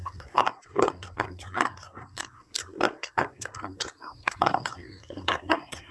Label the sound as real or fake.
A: fake